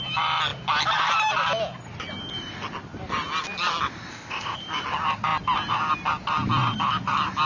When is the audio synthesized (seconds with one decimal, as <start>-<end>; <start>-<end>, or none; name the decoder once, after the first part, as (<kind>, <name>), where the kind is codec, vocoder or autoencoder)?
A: 4.1-4.6 (codec, ZipCodec)